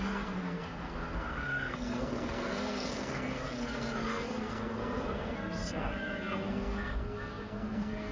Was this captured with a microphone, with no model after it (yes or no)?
no